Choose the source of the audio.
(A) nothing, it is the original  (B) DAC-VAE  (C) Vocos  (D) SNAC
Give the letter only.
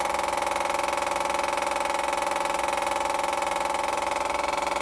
A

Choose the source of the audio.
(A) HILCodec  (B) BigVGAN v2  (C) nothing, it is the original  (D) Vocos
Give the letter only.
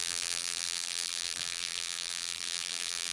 B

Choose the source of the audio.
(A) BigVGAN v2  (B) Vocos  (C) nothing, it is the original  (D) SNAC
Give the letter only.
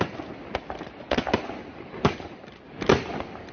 C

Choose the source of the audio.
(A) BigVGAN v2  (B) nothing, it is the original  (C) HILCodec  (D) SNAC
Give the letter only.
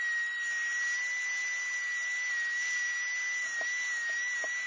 B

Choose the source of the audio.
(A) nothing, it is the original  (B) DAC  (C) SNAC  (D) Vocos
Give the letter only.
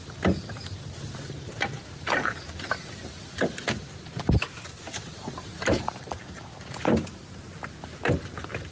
A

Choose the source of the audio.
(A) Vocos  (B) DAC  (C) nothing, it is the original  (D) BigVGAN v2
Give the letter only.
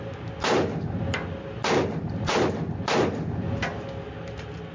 C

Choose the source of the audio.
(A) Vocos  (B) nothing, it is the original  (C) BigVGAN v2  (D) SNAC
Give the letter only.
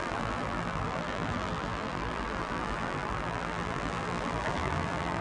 C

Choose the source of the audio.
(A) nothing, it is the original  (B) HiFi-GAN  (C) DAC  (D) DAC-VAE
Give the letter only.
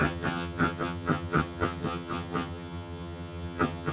B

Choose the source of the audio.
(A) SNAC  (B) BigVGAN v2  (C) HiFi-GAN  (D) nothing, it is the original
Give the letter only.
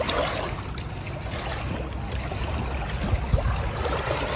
D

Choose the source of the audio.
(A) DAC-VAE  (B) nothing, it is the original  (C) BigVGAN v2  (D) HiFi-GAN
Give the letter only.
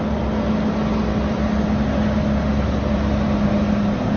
B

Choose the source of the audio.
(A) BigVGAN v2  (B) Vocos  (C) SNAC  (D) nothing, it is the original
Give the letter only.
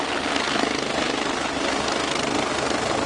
D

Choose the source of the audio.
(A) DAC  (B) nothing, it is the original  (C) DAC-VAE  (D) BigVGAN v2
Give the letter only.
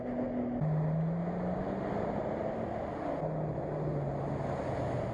B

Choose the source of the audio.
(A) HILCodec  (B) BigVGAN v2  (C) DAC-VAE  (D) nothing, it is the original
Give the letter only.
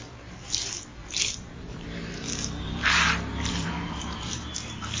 B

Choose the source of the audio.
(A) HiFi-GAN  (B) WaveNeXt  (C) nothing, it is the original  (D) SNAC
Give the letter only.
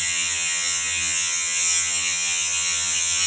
A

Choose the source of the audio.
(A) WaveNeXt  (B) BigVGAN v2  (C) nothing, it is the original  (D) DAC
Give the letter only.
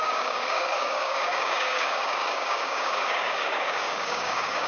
D